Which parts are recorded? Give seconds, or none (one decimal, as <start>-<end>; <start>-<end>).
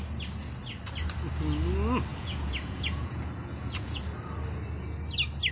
0.0-2.1; 4.0-5.5